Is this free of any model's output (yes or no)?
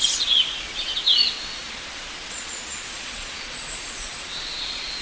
no